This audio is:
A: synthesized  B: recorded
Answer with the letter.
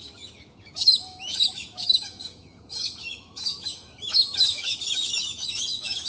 A